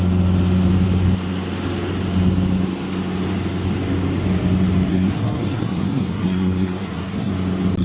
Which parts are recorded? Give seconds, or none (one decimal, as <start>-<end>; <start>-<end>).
0.0-4.9; 7.3-7.8